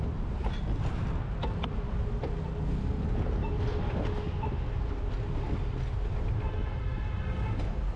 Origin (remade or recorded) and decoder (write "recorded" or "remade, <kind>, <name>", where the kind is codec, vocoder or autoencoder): recorded